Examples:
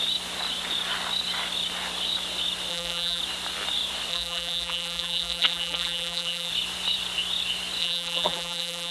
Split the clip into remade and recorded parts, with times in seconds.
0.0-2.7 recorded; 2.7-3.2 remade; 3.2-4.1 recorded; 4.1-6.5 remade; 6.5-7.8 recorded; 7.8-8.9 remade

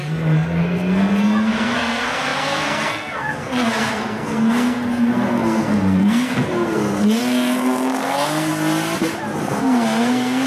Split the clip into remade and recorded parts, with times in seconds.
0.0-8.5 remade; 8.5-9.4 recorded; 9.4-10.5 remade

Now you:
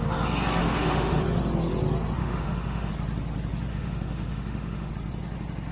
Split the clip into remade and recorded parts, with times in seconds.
0.0-0.6 recorded; 0.6-1.2 remade; 1.2-2.2 recorded; 2.2-2.9 remade; 2.9-3.7 recorded; 3.7-4.9 remade; 4.9-5.7 recorded

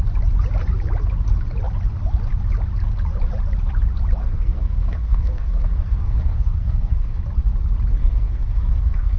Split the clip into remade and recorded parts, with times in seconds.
0.0-4.2 recorded; 4.2-7.2 remade; 7.2-8.0 recorded; 8.0-9.2 remade

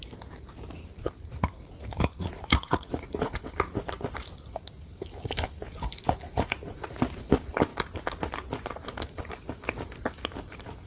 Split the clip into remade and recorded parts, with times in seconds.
0.0-1.0 recorded; 1.0-3.4 remade; 3.4-6.3 recorded; 6.3-7.0 remade; 7.0-10.9 recorded

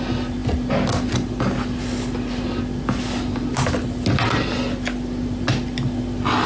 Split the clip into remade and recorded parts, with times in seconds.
0.0-6.5 recorded